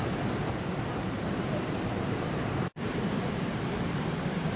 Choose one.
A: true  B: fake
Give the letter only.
B